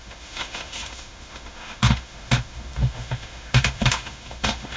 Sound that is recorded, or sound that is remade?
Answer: remade